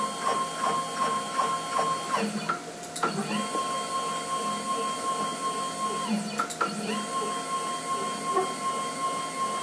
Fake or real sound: real